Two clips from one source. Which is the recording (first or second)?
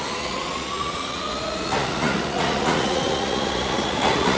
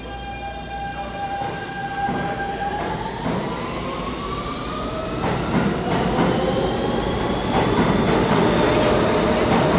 second